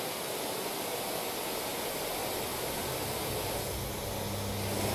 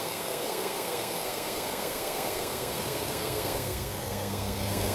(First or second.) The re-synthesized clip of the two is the second